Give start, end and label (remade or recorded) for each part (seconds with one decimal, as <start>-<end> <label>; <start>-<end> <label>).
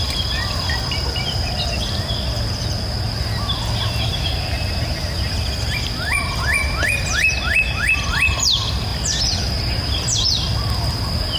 0.0-11.4 recorded